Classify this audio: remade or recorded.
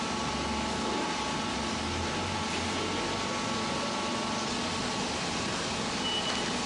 recorded